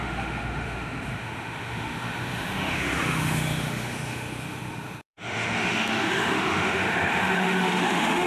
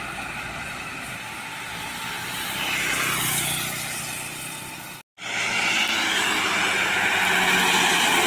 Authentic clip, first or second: second